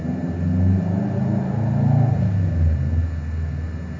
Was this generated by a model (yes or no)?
no